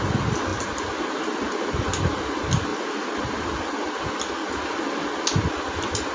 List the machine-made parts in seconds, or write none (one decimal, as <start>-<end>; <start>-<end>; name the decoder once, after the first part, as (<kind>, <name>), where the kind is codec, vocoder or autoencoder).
none